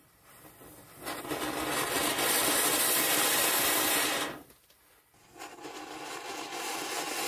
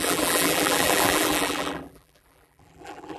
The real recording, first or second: first